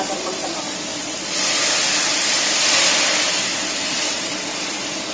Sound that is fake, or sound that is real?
fake